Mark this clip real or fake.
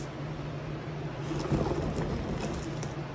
real